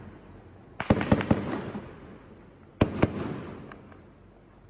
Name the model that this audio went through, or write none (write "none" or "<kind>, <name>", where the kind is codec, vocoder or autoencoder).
none